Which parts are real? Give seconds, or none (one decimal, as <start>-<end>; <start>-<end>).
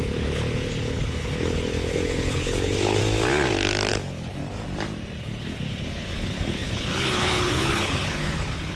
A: 3.0-3.9; 4.4-5.2